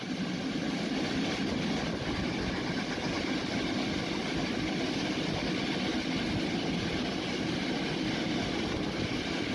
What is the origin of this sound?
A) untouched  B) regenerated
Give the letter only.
A